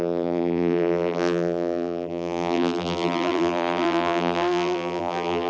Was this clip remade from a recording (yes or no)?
yes